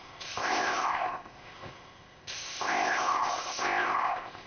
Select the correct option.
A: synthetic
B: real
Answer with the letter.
A